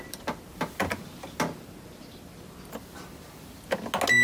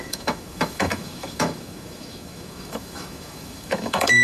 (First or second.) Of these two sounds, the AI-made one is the second